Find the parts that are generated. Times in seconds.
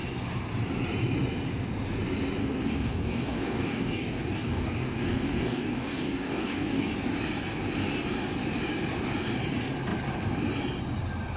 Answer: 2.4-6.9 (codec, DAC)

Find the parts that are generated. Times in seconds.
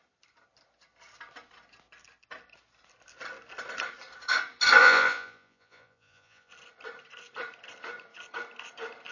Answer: 4.8-6.5 (vocoder, Vocos)